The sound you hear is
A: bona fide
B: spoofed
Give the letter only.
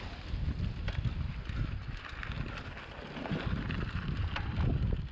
A